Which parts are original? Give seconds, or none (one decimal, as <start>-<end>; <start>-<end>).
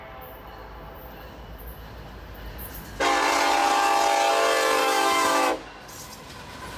0.0-4.8; 5.5-6.8